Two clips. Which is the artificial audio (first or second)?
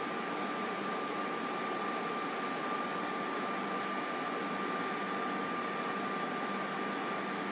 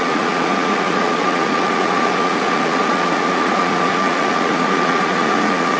second